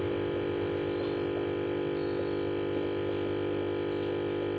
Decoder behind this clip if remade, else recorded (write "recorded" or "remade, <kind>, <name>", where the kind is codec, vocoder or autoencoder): recorded